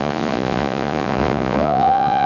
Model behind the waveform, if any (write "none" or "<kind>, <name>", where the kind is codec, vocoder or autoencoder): vocoder, Vocos